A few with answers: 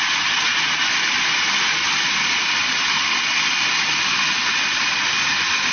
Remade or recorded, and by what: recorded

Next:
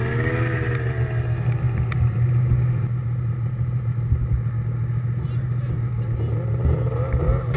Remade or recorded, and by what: recorded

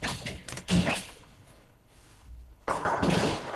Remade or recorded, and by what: remade, codec, HILCodec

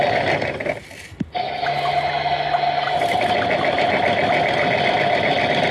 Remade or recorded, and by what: recorded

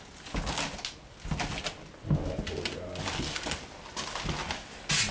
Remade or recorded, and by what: recorded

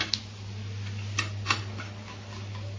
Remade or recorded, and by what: recorded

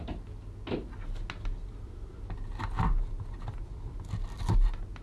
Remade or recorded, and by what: recorded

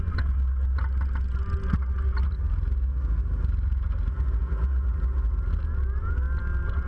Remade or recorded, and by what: recorded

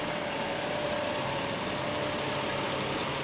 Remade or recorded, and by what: recorded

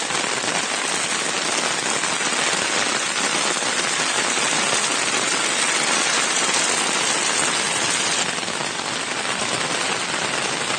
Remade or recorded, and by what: recorded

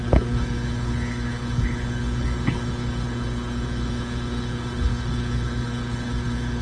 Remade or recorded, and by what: remade, codec, HILCodec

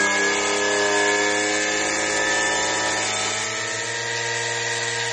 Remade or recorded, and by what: recorded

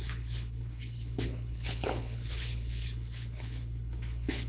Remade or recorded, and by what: remade, codec, HILCodec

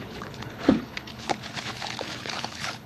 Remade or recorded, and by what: remade, codec, HILCodec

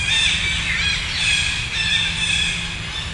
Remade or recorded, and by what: recorded